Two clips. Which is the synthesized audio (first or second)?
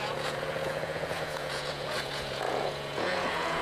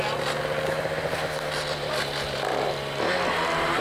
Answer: first